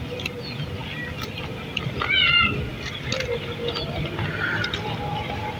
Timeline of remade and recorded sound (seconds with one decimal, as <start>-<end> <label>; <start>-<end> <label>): 0.0-5.6 recorded